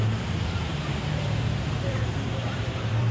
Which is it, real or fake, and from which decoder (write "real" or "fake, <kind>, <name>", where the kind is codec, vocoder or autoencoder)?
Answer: fake, vocoder, BigVGAN v2